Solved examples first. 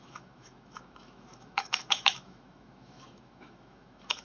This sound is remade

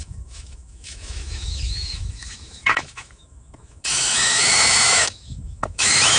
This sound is remade